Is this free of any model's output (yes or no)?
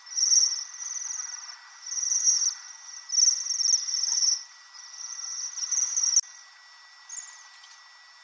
yes